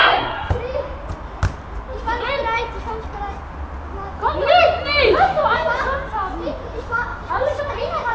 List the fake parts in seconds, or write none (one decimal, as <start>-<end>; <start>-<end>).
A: 0.0-0.5